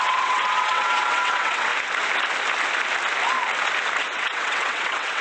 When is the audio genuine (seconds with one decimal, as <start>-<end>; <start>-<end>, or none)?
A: 1.7-4.0